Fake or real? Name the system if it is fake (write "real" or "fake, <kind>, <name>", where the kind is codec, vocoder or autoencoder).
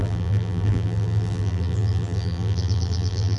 fake, vocoder, BigVGAN v2